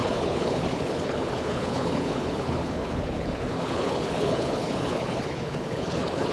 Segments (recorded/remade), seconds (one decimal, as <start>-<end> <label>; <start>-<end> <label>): 0.0-6.3 remade